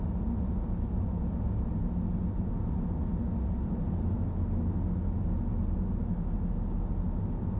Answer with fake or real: real